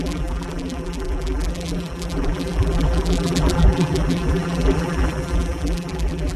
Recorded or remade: remade